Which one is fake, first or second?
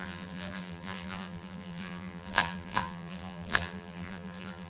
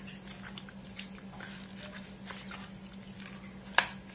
first